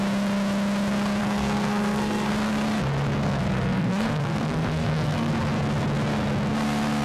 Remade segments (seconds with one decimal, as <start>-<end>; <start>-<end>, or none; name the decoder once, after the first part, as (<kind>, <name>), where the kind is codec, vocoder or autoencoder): 1.2-2.3 (codec, SNAC); 3.2-5.3

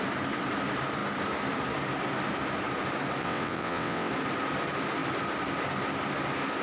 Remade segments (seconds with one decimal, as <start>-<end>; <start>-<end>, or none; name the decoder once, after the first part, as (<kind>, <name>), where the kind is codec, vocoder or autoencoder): 3.2-4.1 (vocoder, WaveNeXt)

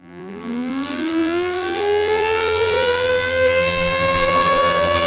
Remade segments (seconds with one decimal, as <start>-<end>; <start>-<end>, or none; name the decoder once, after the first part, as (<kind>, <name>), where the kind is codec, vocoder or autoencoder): 0.0-5.1 (vocoder, BigVGAN v2)

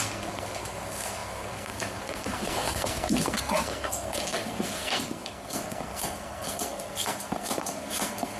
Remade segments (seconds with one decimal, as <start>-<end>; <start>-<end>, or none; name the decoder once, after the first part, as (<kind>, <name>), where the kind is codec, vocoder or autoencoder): 0.0-8.4 (codec, SNAC)

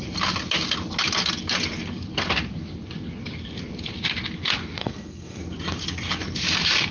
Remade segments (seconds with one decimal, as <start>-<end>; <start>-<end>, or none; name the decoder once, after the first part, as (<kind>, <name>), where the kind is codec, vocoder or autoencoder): 4.8-5.4 (codec, SNAC)

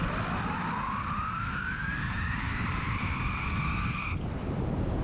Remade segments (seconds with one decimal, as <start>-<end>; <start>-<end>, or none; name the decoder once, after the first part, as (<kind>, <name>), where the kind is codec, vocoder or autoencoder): 1.3-4.3 (codec, DAC)